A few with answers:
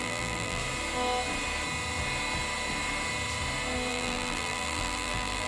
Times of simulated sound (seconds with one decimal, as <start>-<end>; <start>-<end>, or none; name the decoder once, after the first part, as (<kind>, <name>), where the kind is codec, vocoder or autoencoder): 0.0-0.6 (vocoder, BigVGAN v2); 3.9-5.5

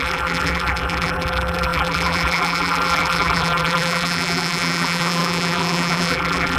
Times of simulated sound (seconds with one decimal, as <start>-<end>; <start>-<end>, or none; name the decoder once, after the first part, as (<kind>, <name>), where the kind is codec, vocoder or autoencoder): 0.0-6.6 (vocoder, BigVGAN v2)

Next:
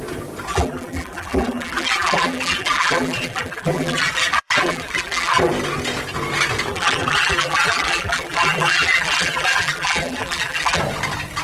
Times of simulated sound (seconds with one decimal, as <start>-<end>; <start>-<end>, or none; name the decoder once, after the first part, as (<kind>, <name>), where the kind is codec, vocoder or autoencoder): 0.5-5.5 (vocoder, BigVGAN v2); 6.7-10.8

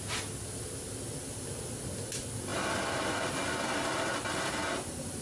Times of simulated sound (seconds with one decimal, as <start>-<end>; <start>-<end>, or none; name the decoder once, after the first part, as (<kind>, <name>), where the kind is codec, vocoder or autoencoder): none

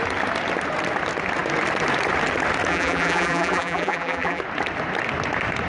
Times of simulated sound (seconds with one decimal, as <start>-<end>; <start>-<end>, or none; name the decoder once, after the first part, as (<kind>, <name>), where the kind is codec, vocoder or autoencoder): 2.7-4.4 (vocoder, BigVGAN v2)

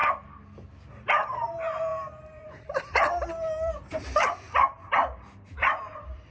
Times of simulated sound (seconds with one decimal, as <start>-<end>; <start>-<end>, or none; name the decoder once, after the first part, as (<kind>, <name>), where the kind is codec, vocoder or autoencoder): 0.9-6.3 (vocoder, BigVGAN v2)

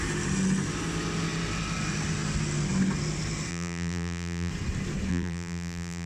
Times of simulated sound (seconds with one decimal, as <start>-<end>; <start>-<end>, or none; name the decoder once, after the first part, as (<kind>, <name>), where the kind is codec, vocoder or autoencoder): 3.5-4.5 (vocoder, BigVGAN v2); 5.1-6.1

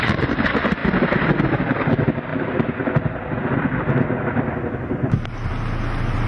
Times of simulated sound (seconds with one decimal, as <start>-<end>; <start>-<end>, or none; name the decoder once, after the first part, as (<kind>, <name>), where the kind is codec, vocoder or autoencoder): none